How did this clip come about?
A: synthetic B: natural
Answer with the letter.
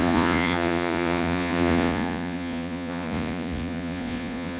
A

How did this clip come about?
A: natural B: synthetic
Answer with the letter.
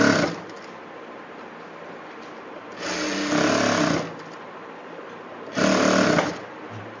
A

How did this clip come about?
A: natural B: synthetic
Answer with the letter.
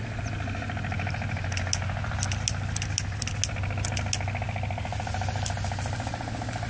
A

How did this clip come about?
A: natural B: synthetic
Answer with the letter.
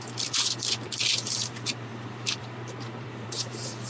B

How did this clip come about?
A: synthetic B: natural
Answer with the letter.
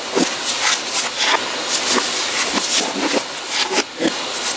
B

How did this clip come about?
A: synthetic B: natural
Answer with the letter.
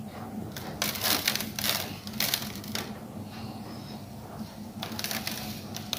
B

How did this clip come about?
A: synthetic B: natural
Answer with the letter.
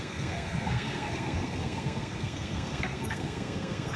A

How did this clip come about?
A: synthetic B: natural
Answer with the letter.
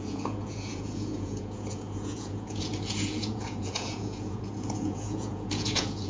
A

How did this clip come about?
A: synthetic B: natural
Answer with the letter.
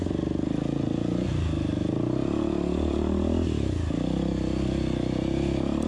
B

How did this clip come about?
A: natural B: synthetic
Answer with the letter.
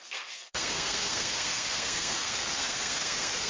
B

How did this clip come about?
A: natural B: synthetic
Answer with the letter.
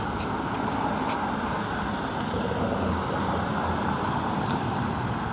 A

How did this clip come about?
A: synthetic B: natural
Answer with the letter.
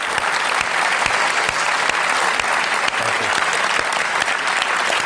B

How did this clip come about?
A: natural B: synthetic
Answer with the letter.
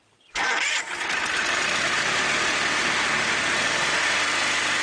A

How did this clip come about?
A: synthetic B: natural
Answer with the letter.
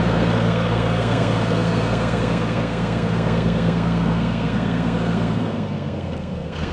A